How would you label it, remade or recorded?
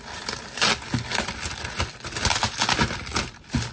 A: recorded